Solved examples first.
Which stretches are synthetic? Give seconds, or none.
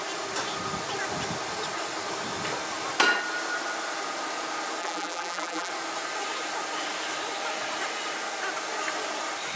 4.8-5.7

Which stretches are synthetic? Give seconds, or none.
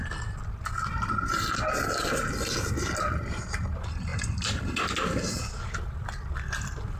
none